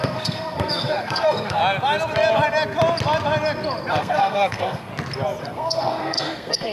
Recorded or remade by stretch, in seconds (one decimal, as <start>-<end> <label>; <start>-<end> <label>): 0.0-1.6 remade; 1.6-3.9 recorded; 3.9-4.9 remade; 4.9-5.4 recorded; 5.4-6.7 remade